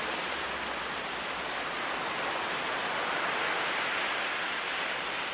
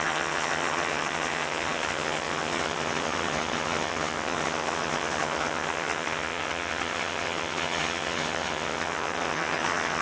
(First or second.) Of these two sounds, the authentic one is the first